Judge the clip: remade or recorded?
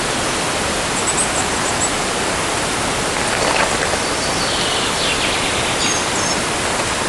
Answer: recorded